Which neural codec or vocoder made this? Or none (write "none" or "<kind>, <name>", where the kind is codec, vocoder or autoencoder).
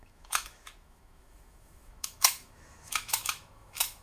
autoencoder, DAC-VAE